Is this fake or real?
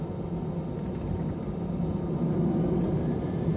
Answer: real